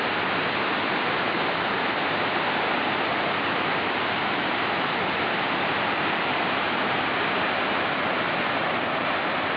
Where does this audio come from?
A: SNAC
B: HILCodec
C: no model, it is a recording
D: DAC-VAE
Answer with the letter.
C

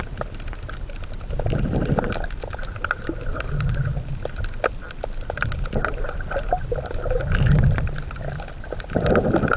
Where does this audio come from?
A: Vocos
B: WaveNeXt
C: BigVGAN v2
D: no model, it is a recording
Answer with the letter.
C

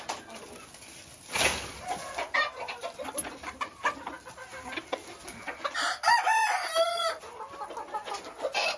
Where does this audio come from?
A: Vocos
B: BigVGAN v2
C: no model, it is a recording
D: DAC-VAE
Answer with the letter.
C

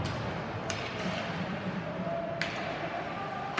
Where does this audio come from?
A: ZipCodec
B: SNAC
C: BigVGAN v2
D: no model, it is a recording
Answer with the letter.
D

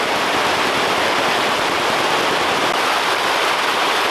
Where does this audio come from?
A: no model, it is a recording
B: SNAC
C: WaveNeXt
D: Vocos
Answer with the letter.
A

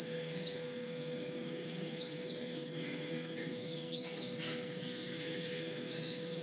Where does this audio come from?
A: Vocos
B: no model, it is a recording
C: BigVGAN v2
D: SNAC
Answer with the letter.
D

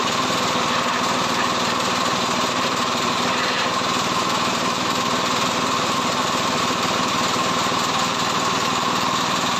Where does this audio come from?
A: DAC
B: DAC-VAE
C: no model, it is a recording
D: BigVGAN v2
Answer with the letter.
D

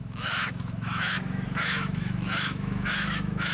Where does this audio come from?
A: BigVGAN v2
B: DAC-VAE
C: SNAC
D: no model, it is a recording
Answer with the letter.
B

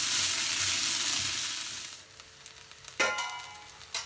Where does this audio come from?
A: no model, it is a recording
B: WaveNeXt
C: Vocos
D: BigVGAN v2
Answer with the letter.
A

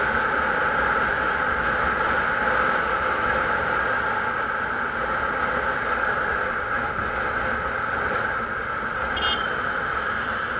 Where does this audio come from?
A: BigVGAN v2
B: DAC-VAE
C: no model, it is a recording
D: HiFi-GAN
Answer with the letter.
C